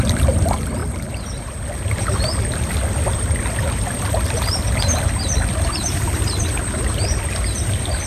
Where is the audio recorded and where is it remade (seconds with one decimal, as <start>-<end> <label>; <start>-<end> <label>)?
0.0-8.1 recorded